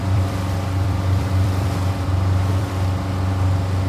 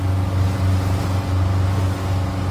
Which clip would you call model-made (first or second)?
first